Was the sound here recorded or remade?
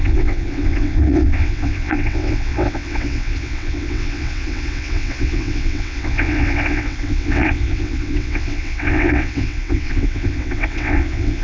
remade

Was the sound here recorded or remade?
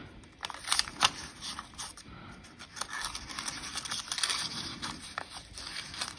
recorded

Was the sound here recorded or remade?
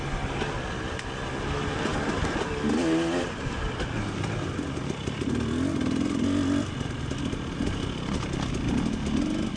recorded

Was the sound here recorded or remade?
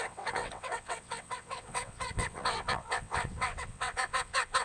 remade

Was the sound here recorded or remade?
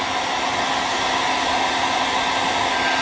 recorded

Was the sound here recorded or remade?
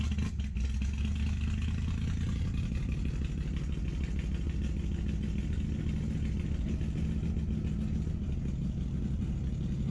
recorded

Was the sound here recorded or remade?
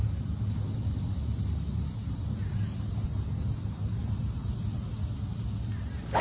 recorded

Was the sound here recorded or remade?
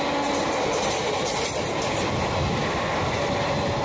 recorded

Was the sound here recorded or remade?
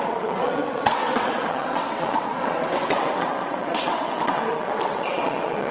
remade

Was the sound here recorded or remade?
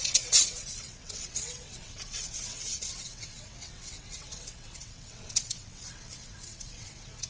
remade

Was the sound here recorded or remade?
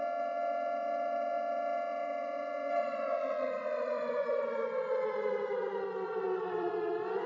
remade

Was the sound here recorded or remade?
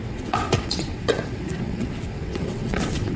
remade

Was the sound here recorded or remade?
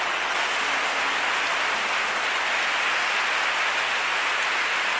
recorded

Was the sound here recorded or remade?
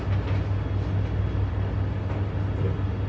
recorded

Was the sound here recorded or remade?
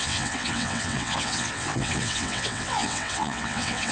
remade